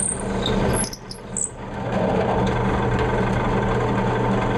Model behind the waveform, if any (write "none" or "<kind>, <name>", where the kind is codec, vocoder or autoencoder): none